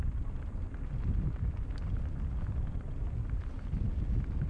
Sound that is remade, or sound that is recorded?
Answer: recorded